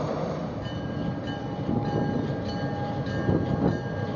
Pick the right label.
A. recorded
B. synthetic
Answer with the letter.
A